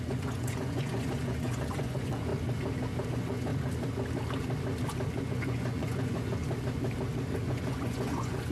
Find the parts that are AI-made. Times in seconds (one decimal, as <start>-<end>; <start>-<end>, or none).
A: 0.0-2.3; 3.1-3.5; 5.3-6.4; 7.4-8.5